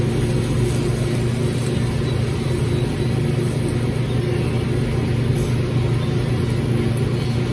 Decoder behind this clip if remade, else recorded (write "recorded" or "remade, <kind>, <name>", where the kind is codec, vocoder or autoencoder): recorded